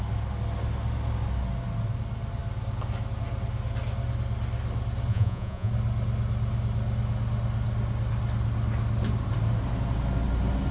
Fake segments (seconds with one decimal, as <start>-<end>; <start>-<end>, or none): 5.1-5.7